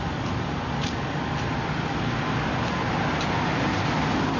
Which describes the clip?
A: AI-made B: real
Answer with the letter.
B